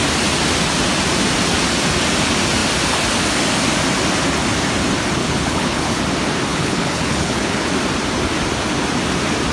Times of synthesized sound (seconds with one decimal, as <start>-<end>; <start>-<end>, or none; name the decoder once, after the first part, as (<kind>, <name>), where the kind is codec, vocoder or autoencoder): 5.2-6.0 (codec, HILCodec); 6.5-7.7